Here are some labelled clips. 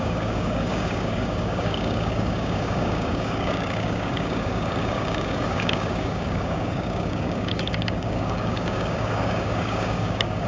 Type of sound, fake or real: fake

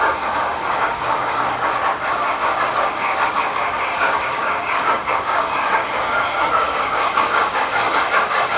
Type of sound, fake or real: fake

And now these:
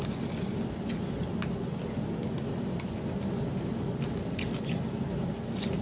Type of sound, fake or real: real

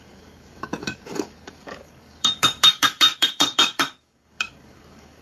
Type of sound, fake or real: fake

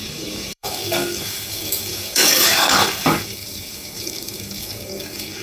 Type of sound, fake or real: fake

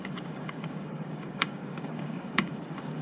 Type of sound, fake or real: fake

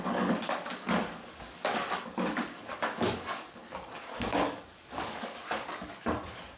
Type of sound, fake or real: fake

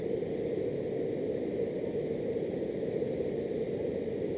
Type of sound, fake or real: real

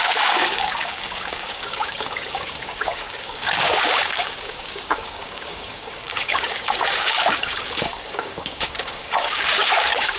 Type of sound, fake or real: fake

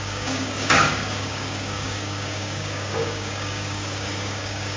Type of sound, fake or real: fake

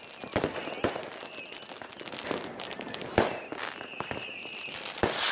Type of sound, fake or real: real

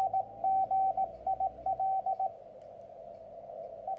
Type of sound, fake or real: real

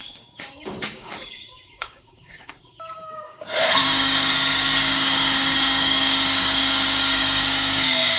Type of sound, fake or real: fake